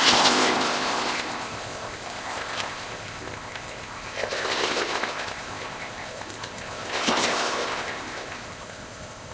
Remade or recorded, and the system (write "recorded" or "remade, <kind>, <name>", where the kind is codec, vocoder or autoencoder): remade, codec, ZipCodec